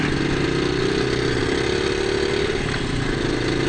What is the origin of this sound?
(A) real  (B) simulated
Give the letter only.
A